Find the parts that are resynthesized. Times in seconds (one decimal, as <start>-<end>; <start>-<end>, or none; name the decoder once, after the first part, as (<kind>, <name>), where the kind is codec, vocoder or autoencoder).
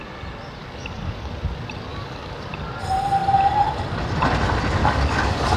0.6-1.3 (codec, DAC); 1.9-2.5; 4.8-5.6